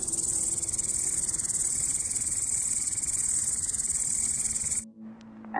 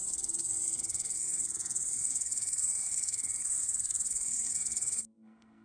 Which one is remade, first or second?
second